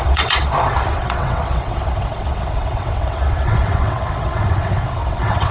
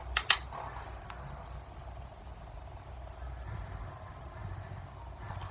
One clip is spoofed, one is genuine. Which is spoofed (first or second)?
first